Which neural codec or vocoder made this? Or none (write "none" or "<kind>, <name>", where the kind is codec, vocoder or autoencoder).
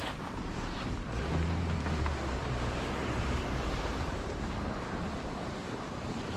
vocoder, BigVGAN v2